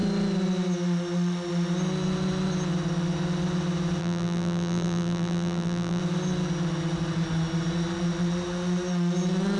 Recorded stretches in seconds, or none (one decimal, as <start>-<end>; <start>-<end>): 0.0-4.0; 6.0-9.6

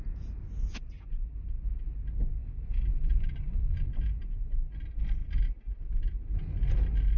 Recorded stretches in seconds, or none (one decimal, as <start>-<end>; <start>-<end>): 0.0-2.4; 4.4-5.2; 5.8-7.2